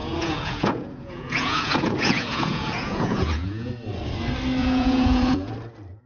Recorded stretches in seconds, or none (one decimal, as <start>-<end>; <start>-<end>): 3.7-4.6; 5.5-6.1